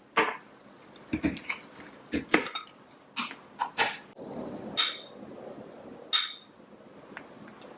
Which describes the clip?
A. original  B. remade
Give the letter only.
A